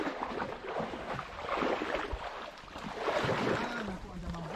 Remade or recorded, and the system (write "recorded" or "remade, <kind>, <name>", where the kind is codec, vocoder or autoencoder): recorded